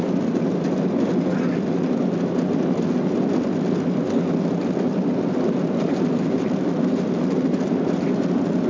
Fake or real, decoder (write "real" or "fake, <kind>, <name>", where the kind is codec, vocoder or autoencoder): real